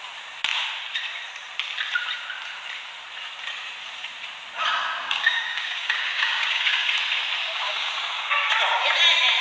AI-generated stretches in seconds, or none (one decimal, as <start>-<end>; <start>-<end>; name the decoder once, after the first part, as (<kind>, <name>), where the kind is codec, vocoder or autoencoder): 5.0-6.9 (codec, DAC); 7.4-8.5

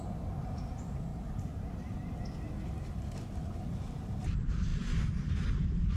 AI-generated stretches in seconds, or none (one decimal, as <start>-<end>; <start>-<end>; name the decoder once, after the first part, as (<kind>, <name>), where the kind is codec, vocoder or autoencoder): none

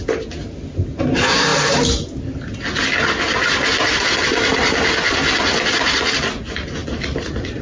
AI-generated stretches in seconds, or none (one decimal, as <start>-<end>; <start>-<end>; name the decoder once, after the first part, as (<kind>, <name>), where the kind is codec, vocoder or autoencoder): 4.5-5.1 (vocoder, BigVGAN v2); 6.8-7.6

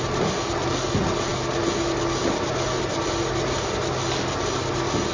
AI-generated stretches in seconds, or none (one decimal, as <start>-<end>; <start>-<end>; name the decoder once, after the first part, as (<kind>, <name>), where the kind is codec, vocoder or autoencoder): none

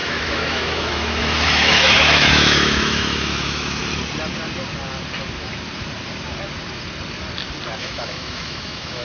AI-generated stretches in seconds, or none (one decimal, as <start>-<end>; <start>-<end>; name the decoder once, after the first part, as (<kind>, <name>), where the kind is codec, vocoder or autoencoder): 0.0-3.8 (autoencoder, DAC-VAE); 7.8-9.0